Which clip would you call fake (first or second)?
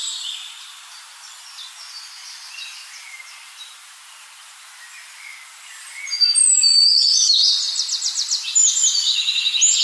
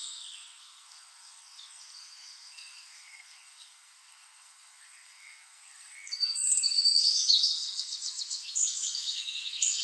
second